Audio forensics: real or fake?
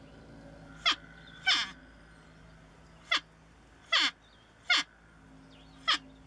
real